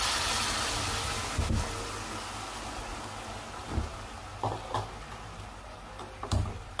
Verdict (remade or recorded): recorded